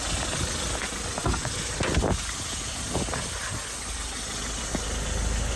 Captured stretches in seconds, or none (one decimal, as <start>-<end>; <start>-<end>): 0.0-5.6